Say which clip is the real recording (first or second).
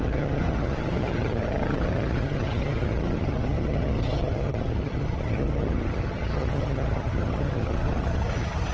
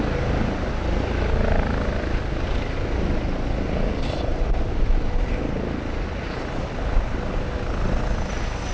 second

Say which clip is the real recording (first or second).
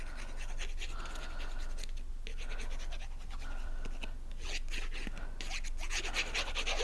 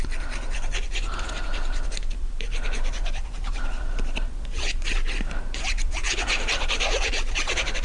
first